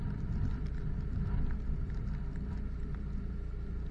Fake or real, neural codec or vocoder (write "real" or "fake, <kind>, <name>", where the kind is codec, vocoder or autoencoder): real